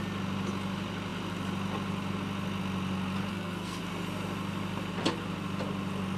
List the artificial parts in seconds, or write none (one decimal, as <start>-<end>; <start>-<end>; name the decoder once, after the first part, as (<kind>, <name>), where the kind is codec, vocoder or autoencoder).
3.3-3.8 (codec, SNAC)